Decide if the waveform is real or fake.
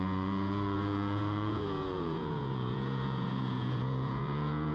fake